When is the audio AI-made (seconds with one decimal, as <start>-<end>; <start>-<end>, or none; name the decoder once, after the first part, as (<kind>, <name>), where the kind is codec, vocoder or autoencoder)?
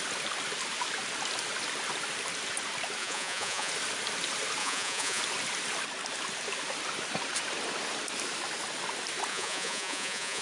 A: 3.0-3.7 (vocoder, Vocos); 4.6-5.2; 9.3-10.4